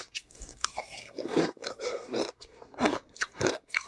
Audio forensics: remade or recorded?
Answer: remade